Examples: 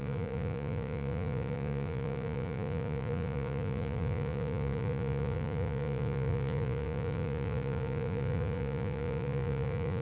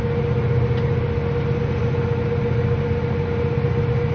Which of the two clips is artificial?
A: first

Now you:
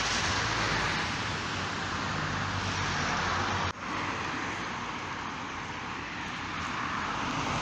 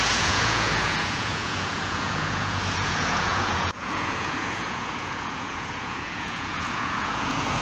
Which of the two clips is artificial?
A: second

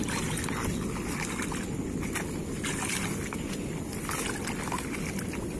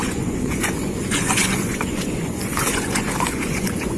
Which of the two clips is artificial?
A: second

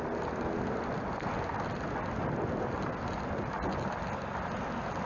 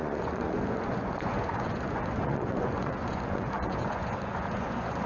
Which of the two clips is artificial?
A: second